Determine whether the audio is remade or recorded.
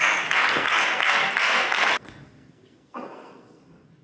remade